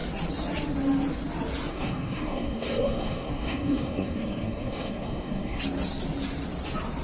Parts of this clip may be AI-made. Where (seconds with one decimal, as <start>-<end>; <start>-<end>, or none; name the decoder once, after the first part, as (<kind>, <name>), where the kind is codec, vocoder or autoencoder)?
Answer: 1.7-5.6 (codec, SNAC)